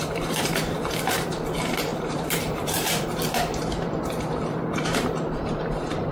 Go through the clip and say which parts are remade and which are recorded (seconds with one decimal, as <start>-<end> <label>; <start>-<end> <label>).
0.0-6.1 remade